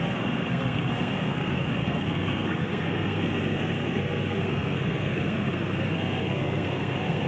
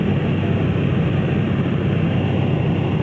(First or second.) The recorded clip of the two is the second